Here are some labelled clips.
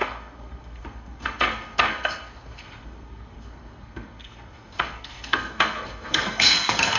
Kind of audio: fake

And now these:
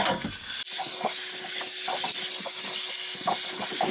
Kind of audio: real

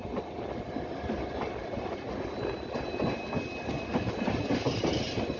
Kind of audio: real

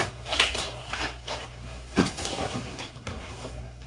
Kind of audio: fake